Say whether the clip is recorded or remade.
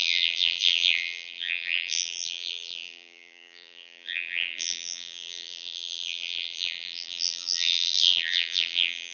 remade